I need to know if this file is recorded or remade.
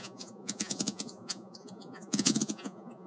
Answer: remade